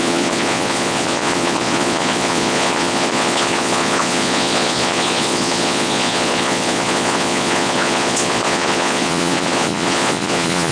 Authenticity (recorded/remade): remade